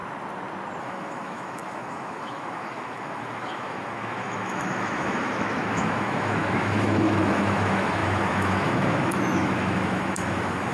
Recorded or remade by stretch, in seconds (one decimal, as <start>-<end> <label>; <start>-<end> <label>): 0.0-0.8 recorded; 0.8-10.7 remade